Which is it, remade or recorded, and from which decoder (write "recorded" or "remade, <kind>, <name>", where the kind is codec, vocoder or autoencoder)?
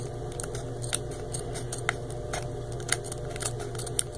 recorded